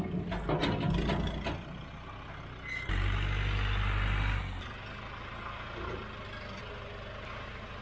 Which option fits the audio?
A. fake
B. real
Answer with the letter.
B